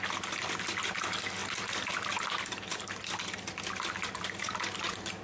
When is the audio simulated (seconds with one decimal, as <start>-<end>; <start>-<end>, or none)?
1.4-2.3